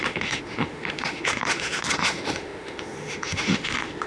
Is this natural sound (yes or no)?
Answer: no